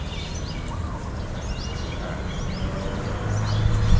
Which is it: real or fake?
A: real